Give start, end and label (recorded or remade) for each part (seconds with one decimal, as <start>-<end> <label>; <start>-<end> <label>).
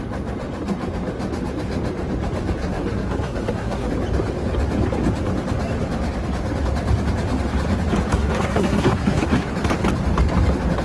0.0-2.6 recorded; 2.6-3.9 remade; 3.9-8.1 recorded; 8.1-9.5 remade; 9.5-10.8 recorded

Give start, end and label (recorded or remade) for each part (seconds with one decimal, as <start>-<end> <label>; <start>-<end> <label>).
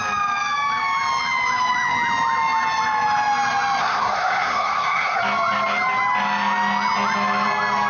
0.0-3.8 recorded; 3.8-5.2 remade; 5.2-7.9 recorded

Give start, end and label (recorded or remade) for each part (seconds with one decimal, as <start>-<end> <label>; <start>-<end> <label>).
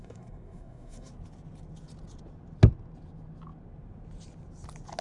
0.0-1.1 remade; 1.1-5.0 recorded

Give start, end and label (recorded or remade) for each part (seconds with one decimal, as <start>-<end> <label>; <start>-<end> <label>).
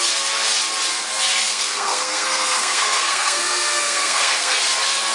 0.0-1.5 recorded; 1.5-4.6 remade; 4.6-5.1 recorded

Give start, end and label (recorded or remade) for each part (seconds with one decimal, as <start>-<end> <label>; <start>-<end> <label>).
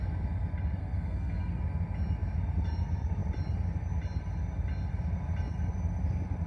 0.0-0.8 recorded; 0.8-1.6 remade; 1.6-6.5 recorded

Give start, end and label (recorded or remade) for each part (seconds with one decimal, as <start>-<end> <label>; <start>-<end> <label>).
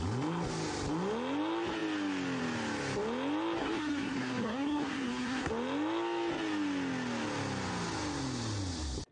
0.0-3.6 recorded; 3.6-5.5 remade; 5.5-9.1 recorded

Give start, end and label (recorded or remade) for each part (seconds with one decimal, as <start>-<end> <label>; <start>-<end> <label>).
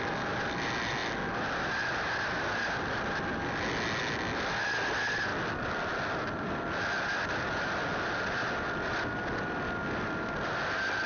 0.0-11.1 recorded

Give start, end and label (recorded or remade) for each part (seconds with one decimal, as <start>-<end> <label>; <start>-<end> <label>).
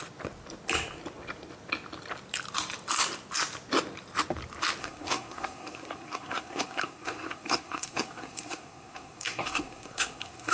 0.0-4.8 recorded; 4.8-10.5 remade